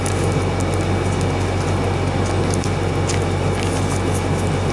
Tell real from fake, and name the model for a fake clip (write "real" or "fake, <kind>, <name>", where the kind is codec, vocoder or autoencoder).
real